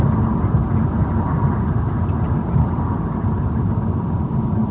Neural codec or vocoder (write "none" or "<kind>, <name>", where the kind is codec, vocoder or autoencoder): none